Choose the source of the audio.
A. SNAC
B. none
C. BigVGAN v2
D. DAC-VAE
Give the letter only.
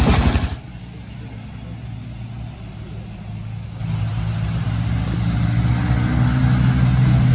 B